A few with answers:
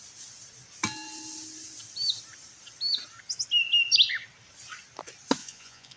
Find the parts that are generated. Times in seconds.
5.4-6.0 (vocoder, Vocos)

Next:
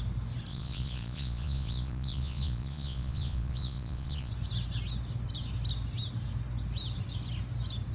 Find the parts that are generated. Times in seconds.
0.5-4.3 (vocoder, Vocos)

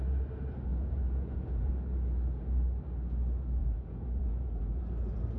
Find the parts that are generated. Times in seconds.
0.7-1.7 (vocoder, Vocos); 3.6-4.8

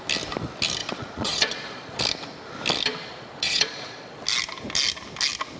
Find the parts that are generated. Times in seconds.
0.8-2.0 (vocoder, Vocos); 3.1-4.2

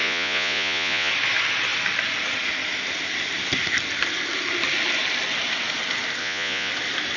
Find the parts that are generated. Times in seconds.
0.0-1.1 (vocoder, Vocos); 6.2-6.7

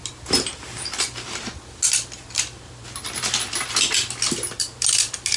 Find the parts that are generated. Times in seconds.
none

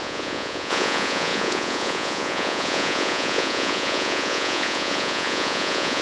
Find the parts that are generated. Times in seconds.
0.0-6.0 (vocoder, Vocos)